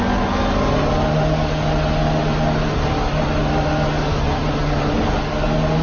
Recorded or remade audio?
recorded